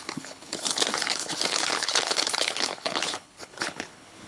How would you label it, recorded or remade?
remade